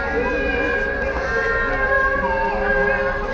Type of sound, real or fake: real